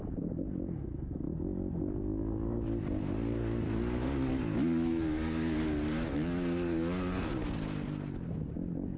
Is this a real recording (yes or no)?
yes